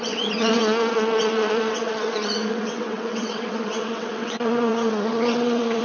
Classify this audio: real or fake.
fake